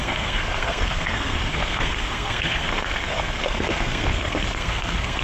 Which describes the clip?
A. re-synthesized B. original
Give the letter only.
A